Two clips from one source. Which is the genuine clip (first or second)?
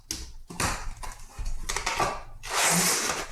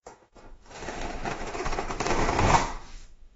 first